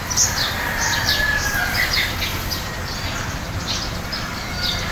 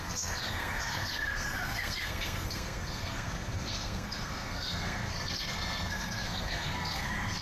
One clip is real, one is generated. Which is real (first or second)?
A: first